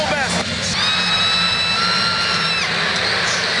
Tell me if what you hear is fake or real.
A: real